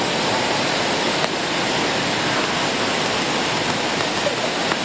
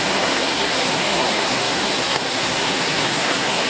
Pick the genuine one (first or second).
first